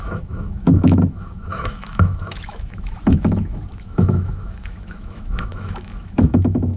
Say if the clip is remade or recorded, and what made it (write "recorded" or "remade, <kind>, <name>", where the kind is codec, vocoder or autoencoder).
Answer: remade, autoencoder, DAC-VAE